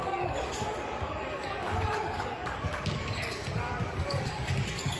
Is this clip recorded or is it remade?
remade